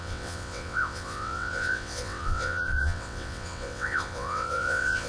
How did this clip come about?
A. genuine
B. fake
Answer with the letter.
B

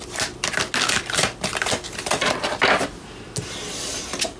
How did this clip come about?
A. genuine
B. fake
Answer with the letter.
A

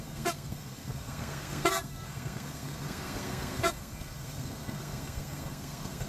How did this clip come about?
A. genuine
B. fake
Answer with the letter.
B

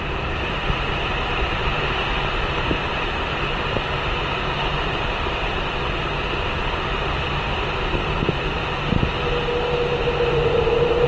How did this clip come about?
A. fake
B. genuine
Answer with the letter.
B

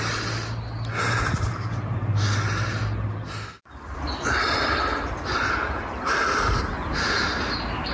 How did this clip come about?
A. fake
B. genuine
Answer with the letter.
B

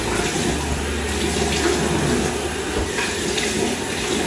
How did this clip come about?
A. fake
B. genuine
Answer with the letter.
B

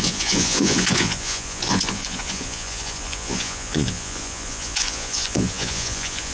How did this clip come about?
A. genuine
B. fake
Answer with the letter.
B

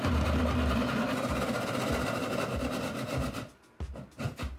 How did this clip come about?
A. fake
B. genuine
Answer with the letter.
B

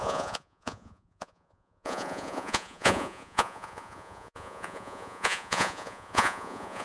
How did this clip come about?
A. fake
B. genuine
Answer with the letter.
A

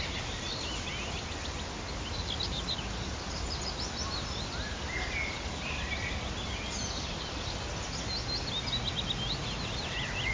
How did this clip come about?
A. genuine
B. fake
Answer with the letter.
A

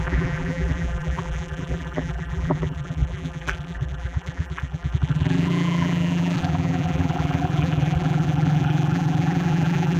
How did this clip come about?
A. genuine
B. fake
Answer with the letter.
B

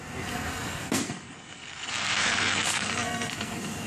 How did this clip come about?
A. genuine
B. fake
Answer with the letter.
B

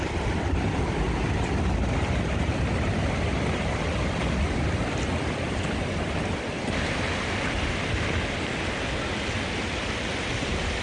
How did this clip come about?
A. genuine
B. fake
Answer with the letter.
A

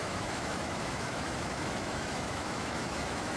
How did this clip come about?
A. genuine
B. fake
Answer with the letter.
B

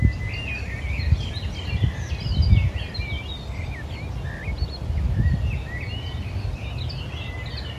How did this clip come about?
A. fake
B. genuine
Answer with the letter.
B